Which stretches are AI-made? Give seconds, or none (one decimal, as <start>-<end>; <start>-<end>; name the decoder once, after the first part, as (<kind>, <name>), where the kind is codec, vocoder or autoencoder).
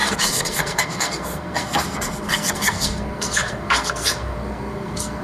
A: 0.0-5.2 (codec, SNAC)